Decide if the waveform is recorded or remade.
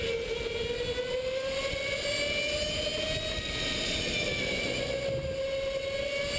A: recorded